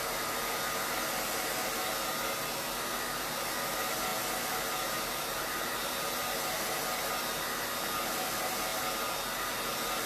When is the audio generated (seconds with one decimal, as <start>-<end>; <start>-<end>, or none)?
none